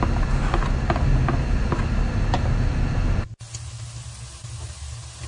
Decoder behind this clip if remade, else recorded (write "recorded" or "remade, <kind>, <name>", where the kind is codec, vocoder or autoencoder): recorded